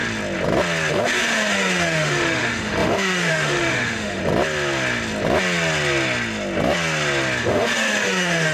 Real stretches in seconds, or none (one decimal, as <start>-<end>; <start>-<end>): 0.0-0.9; 4.2-7.4